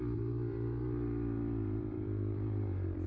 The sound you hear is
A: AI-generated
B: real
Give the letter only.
A